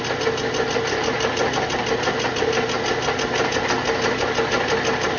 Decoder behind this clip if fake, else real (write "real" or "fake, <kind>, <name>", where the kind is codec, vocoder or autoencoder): real